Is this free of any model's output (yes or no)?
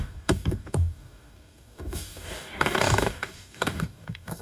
no